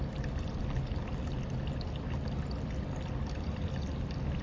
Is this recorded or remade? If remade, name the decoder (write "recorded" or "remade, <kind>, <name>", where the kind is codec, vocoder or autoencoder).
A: recorded